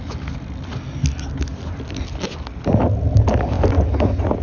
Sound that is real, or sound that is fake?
real